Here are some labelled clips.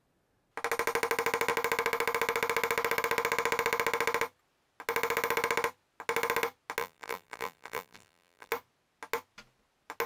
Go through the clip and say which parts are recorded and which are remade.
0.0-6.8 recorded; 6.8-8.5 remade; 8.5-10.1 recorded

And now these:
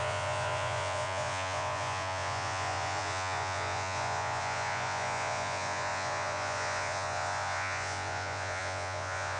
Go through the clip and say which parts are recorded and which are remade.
0.0-9.4 remade

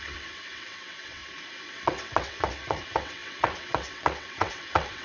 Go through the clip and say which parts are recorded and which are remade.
0.0-1.2 remade; 1.2-1.7 recorded; 1.7-5.0 remade

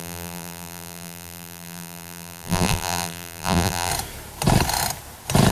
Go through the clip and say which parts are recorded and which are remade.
0.0-3.9 remade; 3.9-5.5 recorded